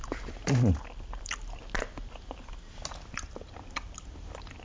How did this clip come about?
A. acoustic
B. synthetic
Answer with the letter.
B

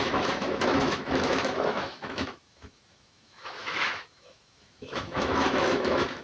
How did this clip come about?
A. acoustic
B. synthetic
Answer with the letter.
B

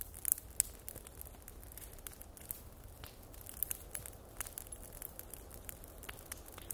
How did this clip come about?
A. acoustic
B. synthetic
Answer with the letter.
A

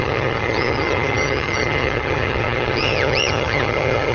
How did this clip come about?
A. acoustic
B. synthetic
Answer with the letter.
B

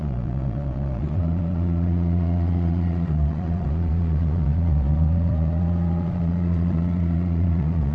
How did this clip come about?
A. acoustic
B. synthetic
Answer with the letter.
B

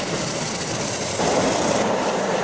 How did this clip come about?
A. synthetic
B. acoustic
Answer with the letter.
B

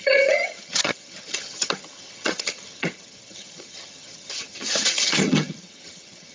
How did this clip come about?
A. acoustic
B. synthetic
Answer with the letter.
B